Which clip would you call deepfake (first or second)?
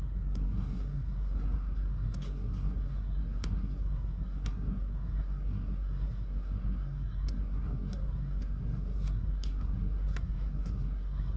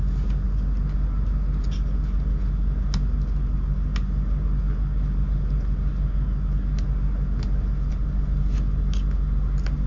first